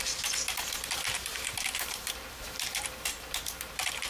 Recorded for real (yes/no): no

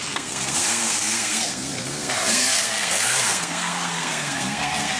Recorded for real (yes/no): no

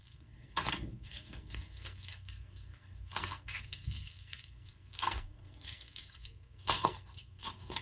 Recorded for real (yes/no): no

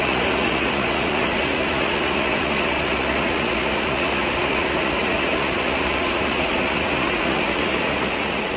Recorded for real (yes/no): no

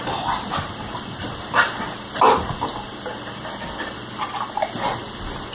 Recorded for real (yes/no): yes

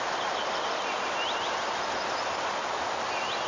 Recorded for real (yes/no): yes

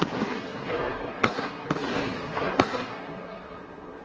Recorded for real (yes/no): no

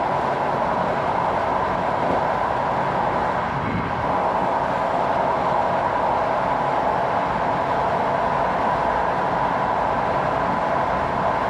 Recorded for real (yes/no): yes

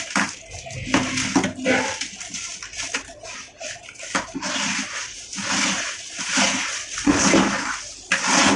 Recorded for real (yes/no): yes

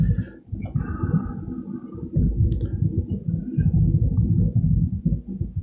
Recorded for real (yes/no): yes